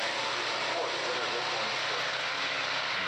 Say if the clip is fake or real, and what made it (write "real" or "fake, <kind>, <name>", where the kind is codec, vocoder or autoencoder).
real